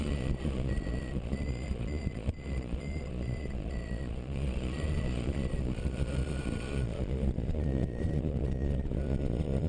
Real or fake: fake